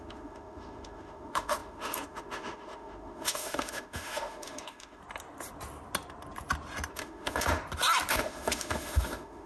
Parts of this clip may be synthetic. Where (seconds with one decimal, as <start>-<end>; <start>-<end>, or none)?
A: 0.0-5.0; 6.9-7.6; 8.1-9.5